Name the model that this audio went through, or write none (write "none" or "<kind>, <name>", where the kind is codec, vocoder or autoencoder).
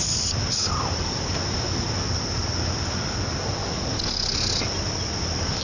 none